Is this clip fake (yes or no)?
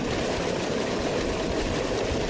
no